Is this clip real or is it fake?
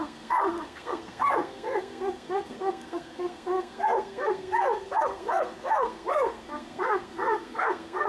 fake